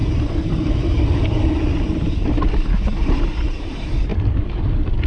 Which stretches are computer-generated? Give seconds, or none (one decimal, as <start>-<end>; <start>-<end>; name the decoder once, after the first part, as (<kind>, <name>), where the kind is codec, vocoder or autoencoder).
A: 2.4-4.1 (vocoder, BigVGAN v2)